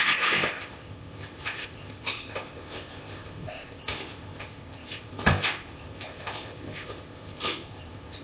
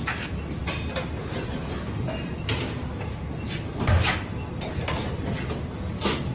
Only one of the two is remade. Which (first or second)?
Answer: first